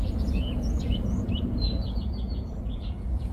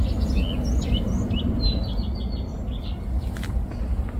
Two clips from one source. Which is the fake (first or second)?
first